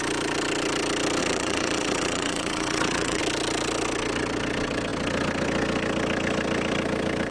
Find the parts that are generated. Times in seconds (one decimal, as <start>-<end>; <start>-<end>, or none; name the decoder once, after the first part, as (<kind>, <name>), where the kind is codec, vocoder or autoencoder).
1.2-3.2 (vocoder, WaveNeXt)

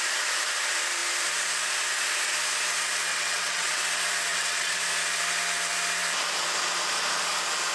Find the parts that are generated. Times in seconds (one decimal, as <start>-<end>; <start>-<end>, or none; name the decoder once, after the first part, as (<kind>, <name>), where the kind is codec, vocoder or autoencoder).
3.1-3.8 (vocoder, WaveNeXt); 4.3-4.8

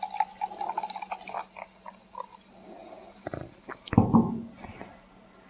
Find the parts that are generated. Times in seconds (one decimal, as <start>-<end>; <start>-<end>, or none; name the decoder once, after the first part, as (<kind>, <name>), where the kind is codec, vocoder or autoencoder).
none